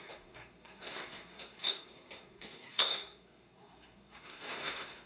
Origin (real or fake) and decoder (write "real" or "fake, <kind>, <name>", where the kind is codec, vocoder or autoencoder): fake, codec, SNAC